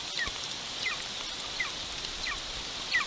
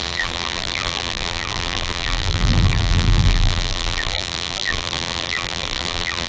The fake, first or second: second